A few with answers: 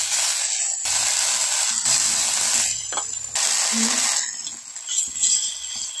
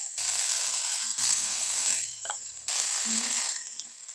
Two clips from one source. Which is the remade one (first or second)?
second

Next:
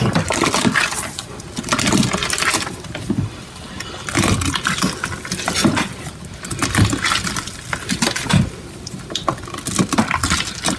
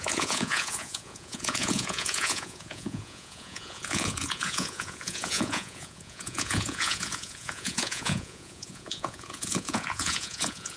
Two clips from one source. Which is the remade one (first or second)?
second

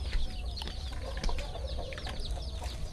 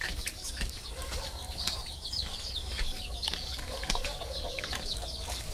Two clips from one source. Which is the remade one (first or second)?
second